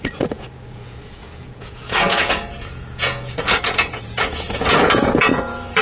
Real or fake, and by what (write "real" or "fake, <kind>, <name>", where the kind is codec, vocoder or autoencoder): fake, vocoder, Vocos